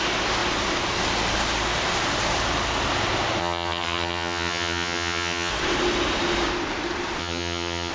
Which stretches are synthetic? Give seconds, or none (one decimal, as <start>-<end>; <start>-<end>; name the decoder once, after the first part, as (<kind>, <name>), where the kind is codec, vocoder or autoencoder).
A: 3.4-5.5 (vocoder, HiFi-GAN); 7.2-7.9